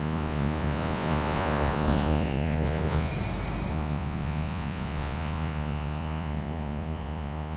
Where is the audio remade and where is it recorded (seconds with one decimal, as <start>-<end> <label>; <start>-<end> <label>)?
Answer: 0.0-3.1 remade; 3.1-3.7 recorded; 3.7-7.6 remade

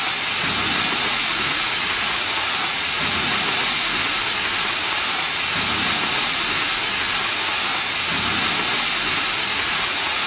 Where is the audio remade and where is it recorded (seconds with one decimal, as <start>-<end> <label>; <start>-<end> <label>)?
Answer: 0.0-0.7 recorded; 0.7-3.9 remade; 3.9-9.5 recorded; 9.5-10.3 remade

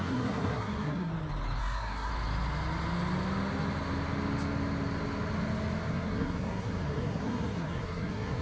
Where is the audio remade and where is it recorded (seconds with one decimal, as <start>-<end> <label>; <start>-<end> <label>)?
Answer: 0.0-1.1 remade; 1.1-1.6 recorded; 1.6-2.1 remade; 2.1-5.9 recorded; 5.9-8.4 remade

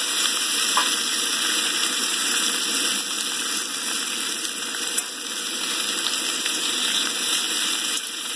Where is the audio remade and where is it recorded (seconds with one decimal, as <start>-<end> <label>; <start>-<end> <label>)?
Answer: 0.0-0.8 remade; 0.8-1.7 recorded; 1.7-2.2 remade; 2.2-6.4 recorded; 6.4-8.4 remade

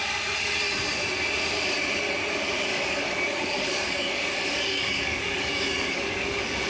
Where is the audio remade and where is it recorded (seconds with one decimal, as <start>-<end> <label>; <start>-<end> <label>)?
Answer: 0.0-2.7 recorded; 2.7-6.7 remade

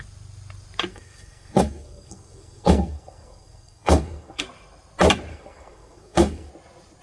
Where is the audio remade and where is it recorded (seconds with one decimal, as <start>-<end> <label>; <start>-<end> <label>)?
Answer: 0.0-0.9 recorded; 0.9-4.4 remade; 4.4-5.3 recorded; 5.3-6.5 remade; 6.5-7.0 recorded

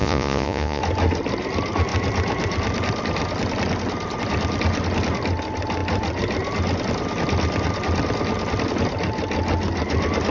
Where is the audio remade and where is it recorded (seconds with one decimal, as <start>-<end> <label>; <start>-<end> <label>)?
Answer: 0.0-0.8 remade; 0.8-10.3 recorded

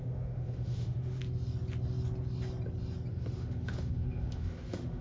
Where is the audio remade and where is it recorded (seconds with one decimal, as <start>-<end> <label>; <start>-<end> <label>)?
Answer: 0.0-1.2 remade; 1.2-3.1 recorded; 3.1-5.0 remade